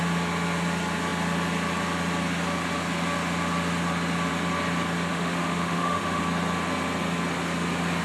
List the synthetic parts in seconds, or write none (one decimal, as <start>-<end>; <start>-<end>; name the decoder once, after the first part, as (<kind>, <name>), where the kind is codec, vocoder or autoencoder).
5.1-6.2 (autoencoder, DAC-VAE)